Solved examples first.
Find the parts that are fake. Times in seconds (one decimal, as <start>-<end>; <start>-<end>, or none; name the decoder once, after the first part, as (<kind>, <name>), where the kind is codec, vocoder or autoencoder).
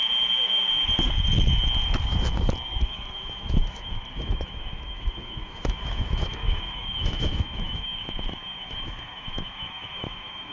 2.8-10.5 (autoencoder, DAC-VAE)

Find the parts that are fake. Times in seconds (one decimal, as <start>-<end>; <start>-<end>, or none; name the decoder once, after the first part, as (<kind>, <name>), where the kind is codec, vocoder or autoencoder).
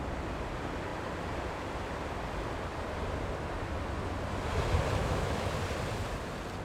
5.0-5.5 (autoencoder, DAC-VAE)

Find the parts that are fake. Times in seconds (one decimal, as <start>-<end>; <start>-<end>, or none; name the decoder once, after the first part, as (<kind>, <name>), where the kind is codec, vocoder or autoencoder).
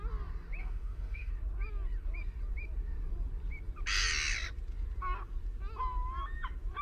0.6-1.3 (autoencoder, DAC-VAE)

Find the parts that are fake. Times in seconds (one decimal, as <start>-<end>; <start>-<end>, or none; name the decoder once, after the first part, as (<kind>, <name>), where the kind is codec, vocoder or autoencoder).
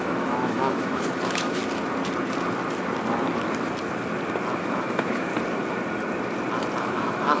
0.0-1.6 (autoencoder, DAC-VAE); 4.6-5.3; 6.8-7.4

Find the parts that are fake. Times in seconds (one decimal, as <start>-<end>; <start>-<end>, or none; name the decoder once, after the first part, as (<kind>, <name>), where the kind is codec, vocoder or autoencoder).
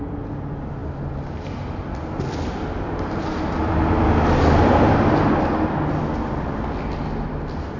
none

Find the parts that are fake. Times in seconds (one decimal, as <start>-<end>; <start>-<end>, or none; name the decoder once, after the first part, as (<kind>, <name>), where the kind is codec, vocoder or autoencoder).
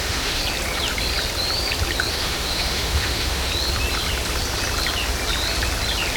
0.0-0.4 (autoencoder, DAC-VAE); 2.1-3.5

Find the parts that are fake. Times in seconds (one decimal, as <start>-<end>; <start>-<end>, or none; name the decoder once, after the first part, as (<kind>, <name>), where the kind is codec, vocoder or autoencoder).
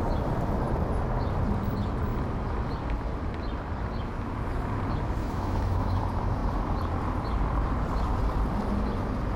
5.2-6.0 (autoencoder, DAC-VAE)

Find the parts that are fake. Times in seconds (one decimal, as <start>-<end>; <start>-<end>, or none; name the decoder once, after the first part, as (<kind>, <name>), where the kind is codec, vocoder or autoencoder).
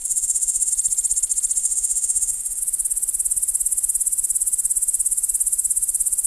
0.0-0.7 (autoencoder, DAC-VAE); 1.6-2.6